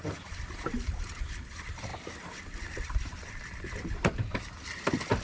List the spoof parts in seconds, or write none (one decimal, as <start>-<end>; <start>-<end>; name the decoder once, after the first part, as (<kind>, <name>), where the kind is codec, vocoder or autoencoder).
none